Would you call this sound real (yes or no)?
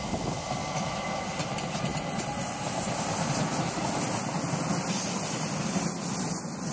yes